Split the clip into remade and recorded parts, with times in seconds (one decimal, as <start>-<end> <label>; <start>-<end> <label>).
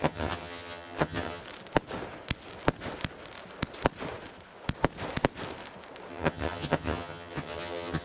0.0-1.4 remade; 1.4-6.1 recorded; 6.1-8.0 remade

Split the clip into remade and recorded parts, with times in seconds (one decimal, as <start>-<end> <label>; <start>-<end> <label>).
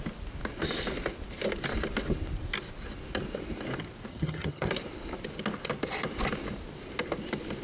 0.0-4.1 recorded; 4.1-4.7 remade; 4.7-7.6 recorded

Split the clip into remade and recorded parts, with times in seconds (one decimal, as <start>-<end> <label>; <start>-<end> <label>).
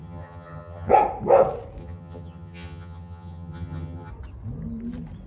0.0-0.9 remade; 0.9-1.8 recorded; 1.8-4.1 remade; 4.1-5.3 recorded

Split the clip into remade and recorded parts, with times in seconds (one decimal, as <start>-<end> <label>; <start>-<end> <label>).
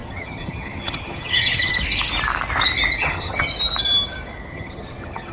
0.0-1.7 remade; 1.7-3.0 recorded; 3.0-3.5 remade; 3.5-4.5 recorded; 4.5-5.3 remade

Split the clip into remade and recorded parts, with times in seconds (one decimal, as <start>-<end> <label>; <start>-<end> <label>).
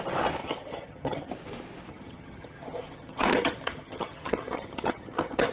0.0-0.4 recorded; 0.4-1.3 remade; 1.3-1.9 recorded; 1.9-5.5 remade